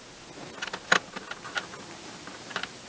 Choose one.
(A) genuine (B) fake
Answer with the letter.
A